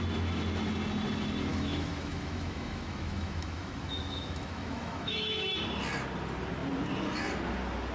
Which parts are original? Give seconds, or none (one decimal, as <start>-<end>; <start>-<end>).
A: 0.0-1.5; 5.5-7.9